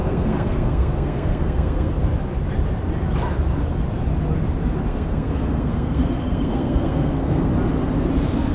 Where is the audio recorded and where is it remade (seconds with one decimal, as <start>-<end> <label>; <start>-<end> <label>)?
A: 0.0-1.9 remade; 1.9-4.9 recorded; 4.9-7.5 remade; 7.5-8.5 recorded